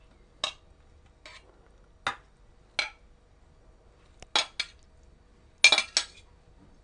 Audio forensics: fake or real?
real